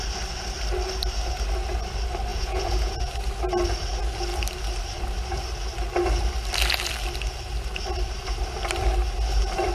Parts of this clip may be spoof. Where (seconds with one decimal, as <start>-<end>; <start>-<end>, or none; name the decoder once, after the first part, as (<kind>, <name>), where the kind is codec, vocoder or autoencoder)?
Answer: 2.3-3.1 (vocoder, Vocos)